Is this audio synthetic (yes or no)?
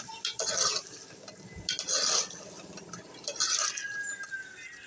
no